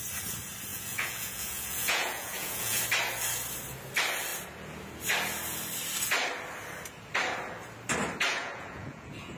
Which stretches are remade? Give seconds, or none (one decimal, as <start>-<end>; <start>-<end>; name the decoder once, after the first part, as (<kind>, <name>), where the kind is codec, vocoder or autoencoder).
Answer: 0.7-2.8 (vocoder, Vocos); 8.3-9.4